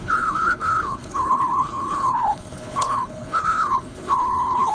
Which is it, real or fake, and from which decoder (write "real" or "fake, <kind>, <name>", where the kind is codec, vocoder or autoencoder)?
fake, codec, HILCodec